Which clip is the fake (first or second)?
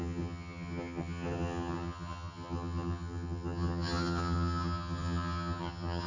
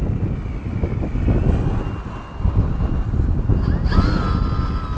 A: first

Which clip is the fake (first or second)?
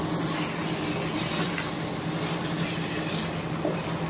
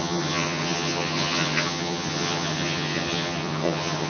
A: second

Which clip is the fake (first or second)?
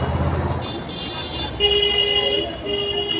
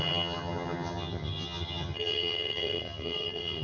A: second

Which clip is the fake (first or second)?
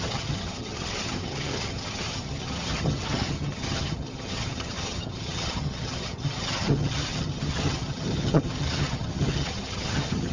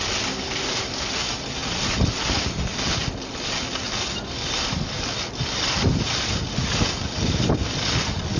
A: first